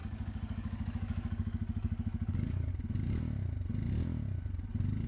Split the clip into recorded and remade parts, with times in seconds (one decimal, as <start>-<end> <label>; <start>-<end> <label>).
0.0-2.7 remade; 2.7-5.1 recorded